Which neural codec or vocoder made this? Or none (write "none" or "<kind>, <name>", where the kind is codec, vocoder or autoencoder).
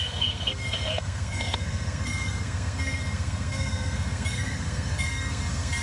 codec, SNAC